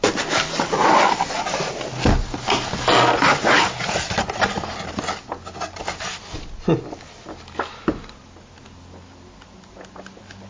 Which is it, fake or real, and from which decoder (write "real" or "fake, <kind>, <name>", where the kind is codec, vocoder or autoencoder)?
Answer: real